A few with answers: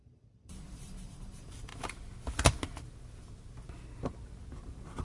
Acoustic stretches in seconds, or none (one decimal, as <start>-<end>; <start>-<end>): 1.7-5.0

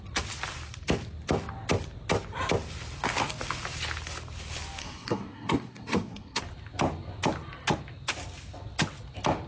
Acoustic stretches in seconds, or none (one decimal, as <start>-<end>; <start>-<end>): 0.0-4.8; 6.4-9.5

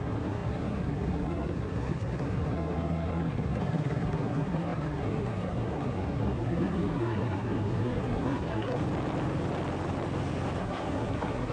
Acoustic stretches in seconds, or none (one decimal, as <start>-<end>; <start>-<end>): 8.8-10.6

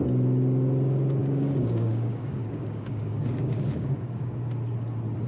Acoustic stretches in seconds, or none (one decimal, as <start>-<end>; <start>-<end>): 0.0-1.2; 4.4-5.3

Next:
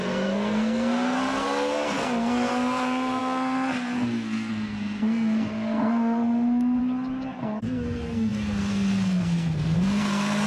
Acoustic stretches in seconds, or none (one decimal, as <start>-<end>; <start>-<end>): 6.8-7.4

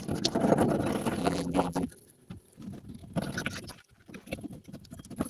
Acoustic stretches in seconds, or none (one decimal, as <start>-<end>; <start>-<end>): 0.0-1.2; 1.9-5.3

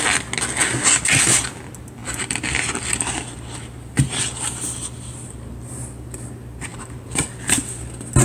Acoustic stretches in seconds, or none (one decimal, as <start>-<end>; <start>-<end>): 0.0-2.0; 6.3-6.7; 7.5-8.2

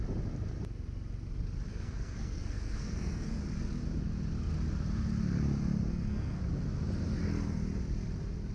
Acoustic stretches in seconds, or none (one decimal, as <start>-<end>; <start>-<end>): 0.0-1.7; 3.4-5.9; 6.4-8.5